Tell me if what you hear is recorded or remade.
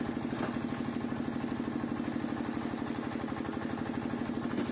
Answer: recorded